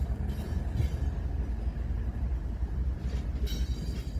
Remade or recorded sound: recorded